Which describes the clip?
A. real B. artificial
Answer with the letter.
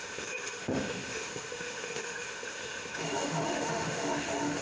B